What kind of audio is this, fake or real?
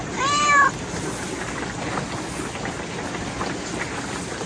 real